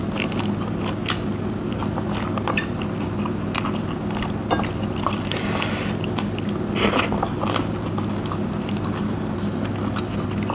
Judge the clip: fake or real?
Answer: real